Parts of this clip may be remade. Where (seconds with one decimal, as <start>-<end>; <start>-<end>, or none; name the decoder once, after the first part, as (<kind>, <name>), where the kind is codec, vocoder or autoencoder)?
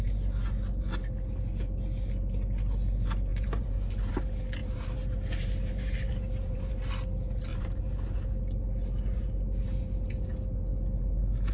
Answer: 3.3-4.1 (vocoder, BigVGAN v2); 4.6-6.7; 7.5-8.3